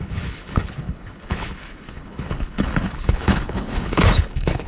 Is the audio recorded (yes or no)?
no